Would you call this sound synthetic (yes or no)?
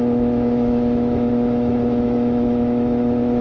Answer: yes